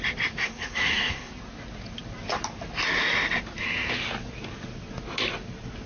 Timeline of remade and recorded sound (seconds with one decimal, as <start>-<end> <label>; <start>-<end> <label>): 0.0-0.4 recorded; 0.4-1.3 remade; 1.3-5.9 recorded